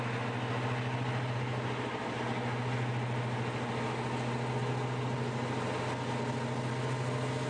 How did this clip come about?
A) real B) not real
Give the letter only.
A